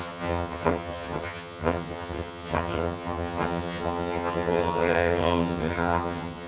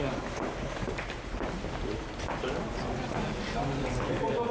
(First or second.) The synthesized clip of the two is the first